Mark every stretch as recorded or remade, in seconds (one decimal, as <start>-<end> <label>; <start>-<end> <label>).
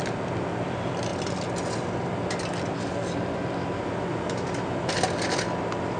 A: 0.0-4.1 recorded; 4.1-4.9 remade; 4.9-6.0 recorded